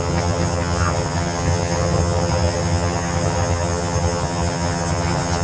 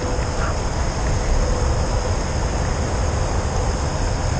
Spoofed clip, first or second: first